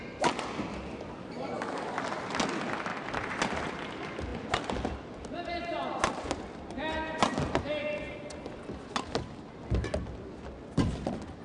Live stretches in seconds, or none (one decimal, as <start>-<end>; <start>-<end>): 0.0-11.4